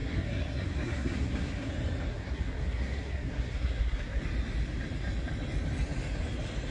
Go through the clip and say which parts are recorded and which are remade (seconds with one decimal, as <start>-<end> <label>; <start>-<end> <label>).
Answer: 0.0-1.7 remade; 1.7-2.1 recorded; 2.1-4.2 remade; 4.2-6.7 recorded